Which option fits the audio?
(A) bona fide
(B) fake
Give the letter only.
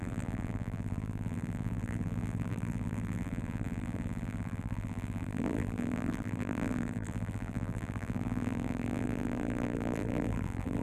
B